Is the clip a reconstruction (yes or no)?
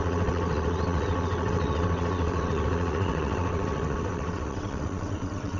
yes